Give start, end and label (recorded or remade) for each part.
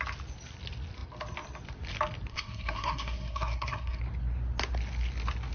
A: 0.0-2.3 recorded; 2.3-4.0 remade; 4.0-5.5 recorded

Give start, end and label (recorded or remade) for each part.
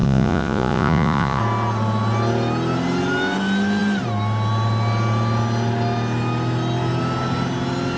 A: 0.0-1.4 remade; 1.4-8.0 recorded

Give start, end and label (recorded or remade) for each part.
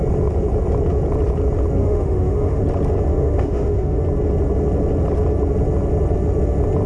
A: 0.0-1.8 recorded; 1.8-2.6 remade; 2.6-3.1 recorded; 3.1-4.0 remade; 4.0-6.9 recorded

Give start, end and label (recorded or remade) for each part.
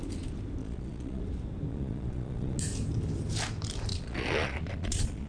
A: 0.0-0.6 recorded; 0.6-1.2 remade; 1.2-1.7 recorded; 1.7-2.6 remade; 2.6-3.9 recorded; 3.9-5.3 remade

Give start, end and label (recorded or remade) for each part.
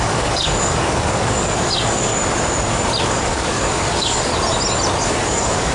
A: 0.0-2.1 remade; 2.1-3.0 recorded; 3.0-4.3 remade; 4.3-5.0 recorded; 5.0-5.7 remade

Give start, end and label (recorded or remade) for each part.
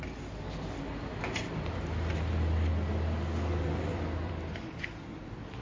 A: 0.0-3.9 recorded; 3.9-5.6 remade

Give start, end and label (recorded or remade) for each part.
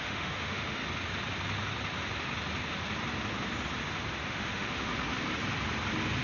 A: 0.0-0.8 remade; 0.8-4.3 recorded; 4.3-4.9 remade; 4.9-6.2 recorded